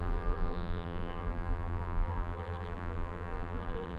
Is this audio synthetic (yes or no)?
yes